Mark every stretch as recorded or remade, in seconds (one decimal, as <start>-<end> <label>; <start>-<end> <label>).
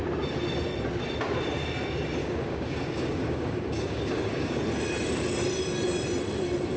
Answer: 0.0-2.2 recorded; 2.2-4.6 remade; 4.6-6.8 recorded